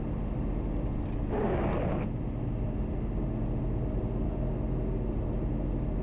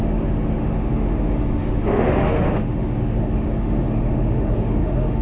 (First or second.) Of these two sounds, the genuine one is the first